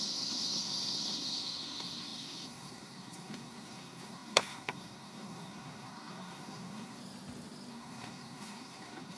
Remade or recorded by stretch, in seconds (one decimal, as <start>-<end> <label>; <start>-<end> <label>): 0.0-7.0 remade; 7.0-7.7 recorded; 7.7-9.2 remade